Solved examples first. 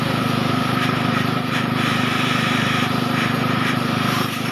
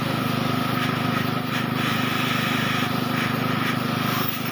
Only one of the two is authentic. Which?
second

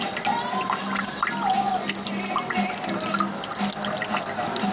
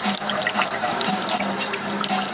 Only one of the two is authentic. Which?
first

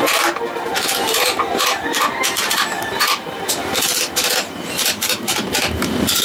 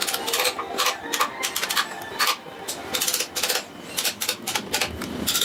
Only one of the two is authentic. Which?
second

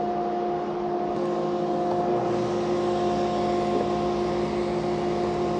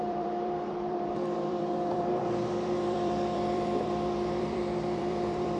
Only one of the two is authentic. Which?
first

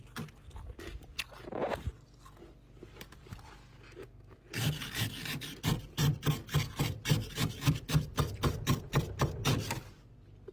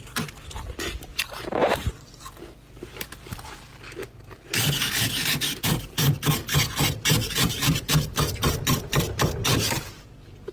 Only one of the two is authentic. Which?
first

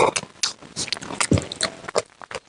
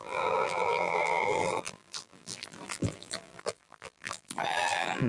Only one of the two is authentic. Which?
first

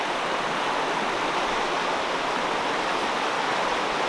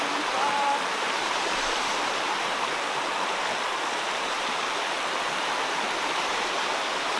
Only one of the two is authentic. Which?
first